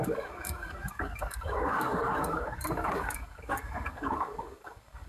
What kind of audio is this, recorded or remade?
remade